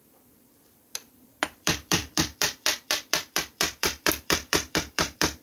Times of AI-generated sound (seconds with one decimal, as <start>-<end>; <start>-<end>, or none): 0.0-5.4